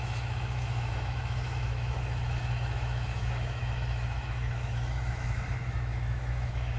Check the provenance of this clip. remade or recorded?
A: remade